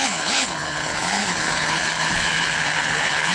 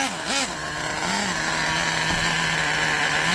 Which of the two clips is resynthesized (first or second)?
first